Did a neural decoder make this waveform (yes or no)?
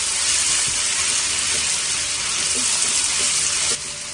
no